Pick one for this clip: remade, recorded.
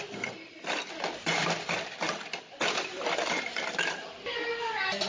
recorded